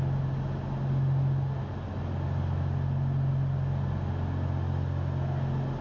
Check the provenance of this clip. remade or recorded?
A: recorded